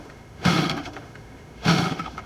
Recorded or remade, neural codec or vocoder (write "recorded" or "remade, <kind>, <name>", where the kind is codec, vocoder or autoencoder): remade, autoencoder, DAC-VAE